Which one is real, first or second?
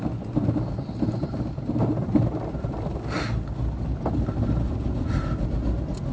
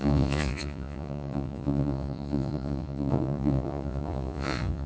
first